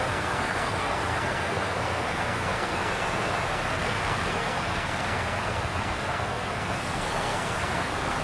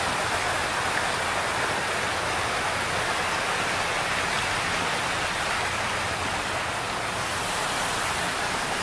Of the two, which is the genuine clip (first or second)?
second